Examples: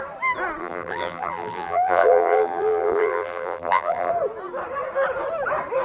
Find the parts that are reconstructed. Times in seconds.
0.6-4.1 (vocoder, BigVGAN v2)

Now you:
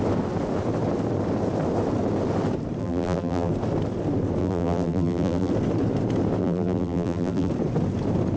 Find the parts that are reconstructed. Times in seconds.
2.8-3.5 (vocoder, BigVGAN v2); 4.4-5.5; 6.4-7.5

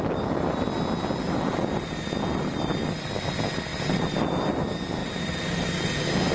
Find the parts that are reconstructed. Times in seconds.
3.7-4.4 (vocoder, BigVGAN v2)

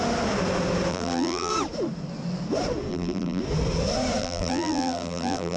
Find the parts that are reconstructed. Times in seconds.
0.9-1.5 (vocoder, BigVGAN v2); 2.9-3.4; 4.2-5.6

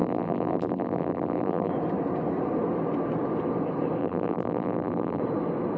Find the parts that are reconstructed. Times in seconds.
0.0-1.7 (vocoder, BigVGAN v2); 4.0-5.2

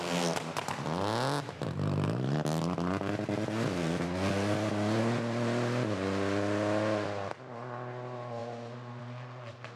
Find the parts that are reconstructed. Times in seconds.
none